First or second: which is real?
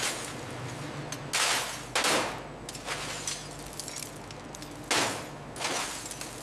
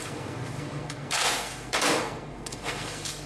first